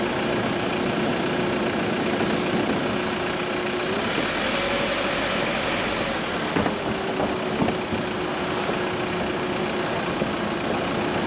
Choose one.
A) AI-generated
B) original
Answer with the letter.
B